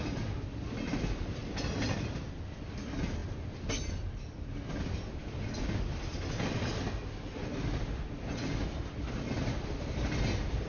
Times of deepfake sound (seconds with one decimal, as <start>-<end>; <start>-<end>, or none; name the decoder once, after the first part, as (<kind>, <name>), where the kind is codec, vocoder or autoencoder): none